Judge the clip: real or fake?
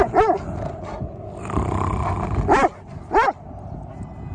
real